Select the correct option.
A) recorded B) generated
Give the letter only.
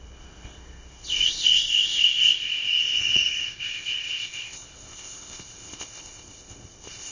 B